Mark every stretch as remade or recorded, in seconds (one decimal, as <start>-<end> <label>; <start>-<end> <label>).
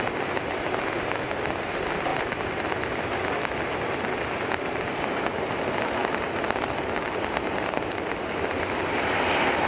0.0-9.7 recorded